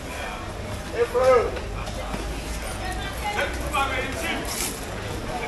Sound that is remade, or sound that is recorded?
recorded